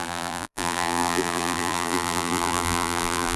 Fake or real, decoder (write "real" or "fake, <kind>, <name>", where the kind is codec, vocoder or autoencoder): fake, vocoder, BigVGAN v2